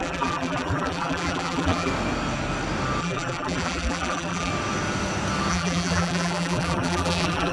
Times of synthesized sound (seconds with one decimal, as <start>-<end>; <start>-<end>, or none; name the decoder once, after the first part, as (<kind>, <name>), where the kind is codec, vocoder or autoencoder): 0.0-1.9 (vocoder, BigVGAN v2); 3.0-4.5; 5.5-7.5

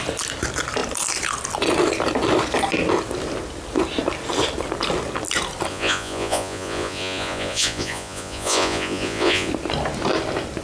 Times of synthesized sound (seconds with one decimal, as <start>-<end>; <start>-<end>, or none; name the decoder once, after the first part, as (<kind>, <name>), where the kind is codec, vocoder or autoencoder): 5.7-9.5 (vocoder, Vocos)

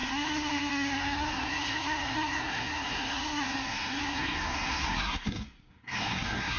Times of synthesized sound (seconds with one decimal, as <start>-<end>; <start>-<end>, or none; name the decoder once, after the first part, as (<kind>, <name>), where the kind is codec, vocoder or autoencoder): 0.0-6.6 (codec, SNAC)

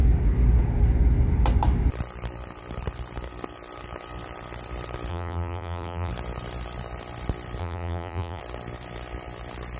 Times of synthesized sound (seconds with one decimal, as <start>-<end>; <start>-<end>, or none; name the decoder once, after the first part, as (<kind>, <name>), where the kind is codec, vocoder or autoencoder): 5.1-6.1 (vocoder, BigVGAN v2); 7.6-8.4

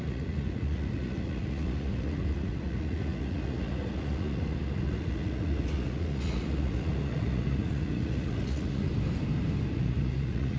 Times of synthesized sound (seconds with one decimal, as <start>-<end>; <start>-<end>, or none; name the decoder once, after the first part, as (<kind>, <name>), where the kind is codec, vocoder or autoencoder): 0.0-8.9 (vocoder, Vocos); 9.7-10.6